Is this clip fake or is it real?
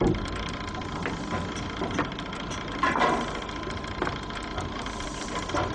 real